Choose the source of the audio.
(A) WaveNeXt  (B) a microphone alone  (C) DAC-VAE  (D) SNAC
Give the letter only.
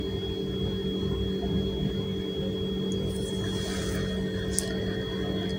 B